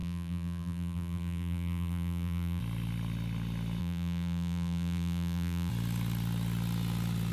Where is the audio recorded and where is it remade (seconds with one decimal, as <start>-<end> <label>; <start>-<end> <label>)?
0.0-2.6 remade; 2.6-3.8 recorded; 3.8-5.7 remade; 5.7-7.3 recorded